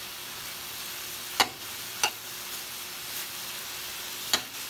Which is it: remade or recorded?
recorded